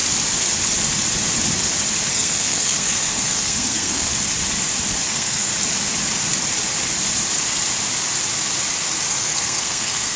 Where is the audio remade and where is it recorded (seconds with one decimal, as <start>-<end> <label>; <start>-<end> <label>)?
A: 0.0-2.1 recorded; 2.1-4.1 remade; 4.1-5.1 recorded; 5.1-5.5 remade; 5.5-9.1 recorded; 9.1-10.2 remade